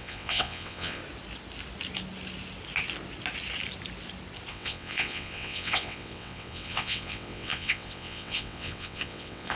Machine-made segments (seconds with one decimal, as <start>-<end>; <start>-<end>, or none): 0.0-1.0; 4.5-9.6